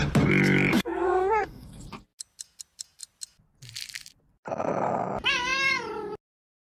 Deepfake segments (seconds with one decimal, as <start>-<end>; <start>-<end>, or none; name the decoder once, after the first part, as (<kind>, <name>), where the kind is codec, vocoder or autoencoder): 0.7-1.8 (codec, SNAC)